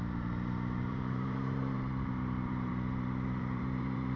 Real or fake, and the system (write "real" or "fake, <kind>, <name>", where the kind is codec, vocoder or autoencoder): fake, vocoder, BigVGAN v2